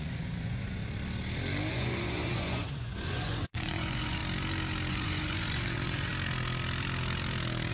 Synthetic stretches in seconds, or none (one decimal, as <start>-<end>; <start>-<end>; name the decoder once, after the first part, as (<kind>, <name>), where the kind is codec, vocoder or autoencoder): 0.0-0.8 (vocoder, Vocos); 1.7-4.2; 4.9-6.1